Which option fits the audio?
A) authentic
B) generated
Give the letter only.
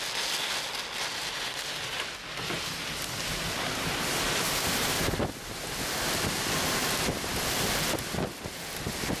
A